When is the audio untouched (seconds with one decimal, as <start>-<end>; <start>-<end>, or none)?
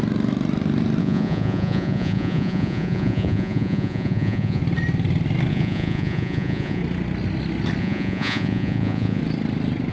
0.0-1.0; 4.6-5.5; 6.8-7.8; 9.2-9.9